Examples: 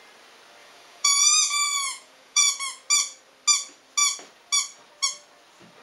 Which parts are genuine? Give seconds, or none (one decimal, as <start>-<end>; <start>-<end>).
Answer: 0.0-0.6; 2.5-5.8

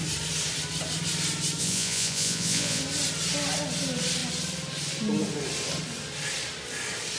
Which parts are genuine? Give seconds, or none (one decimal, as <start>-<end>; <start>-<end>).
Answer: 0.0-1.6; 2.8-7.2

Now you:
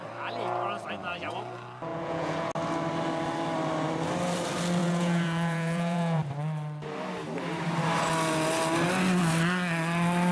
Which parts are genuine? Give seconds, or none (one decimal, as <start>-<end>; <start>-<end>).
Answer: 0.0-1.9; 2.5-4.8; 6.2-10.3